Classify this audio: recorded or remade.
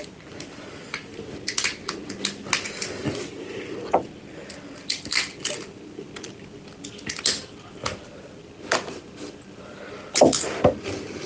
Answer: recorded